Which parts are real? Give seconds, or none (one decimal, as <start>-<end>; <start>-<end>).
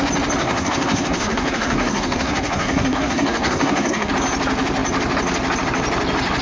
0.0-0.4; 4.1-6.4